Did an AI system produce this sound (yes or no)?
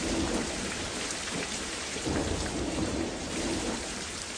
yes